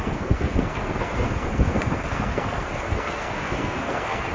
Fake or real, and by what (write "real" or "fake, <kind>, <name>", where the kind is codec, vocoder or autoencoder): fake, codec, SNAC